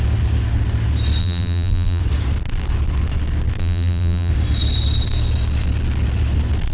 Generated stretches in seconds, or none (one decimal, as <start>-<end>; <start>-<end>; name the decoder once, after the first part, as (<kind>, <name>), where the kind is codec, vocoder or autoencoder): 1.2-2.0 (vocoder, BigVGAN v2); 3.6-4.3